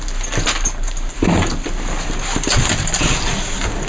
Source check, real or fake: real